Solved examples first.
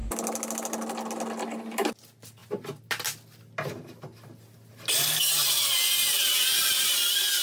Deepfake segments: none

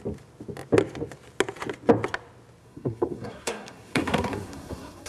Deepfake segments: 2.6-5.1 (codec, SNAC)

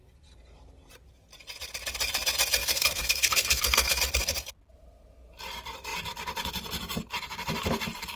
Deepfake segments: 2.6-4.0 (codec, SNAC)

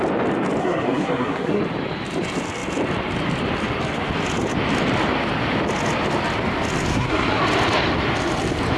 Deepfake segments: 0.6-1.6 (codec, SNAC); 6.9-7.4

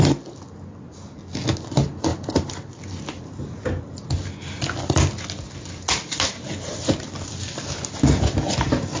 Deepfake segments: none

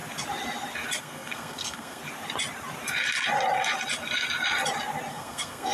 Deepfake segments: 1.0-2.0 (codec, SNAC); 5.1-5.7

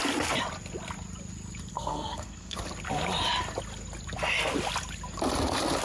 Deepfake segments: 1.7-2.6 (codec, SNAC)